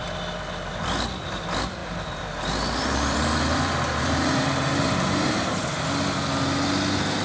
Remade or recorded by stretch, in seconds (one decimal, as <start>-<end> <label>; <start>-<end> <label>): 0.0-1.8 recorded; 1.8-5.8 remade; 5.8-7.2 recorded